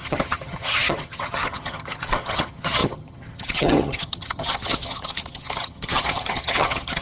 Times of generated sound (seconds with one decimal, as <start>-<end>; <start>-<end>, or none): 0.0-7.0